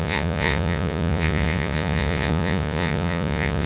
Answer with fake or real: fake